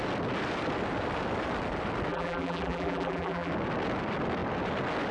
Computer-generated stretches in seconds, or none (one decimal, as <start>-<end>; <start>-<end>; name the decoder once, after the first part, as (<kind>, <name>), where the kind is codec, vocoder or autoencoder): 2.1-3.5 (vocoder, BigVGAN v2)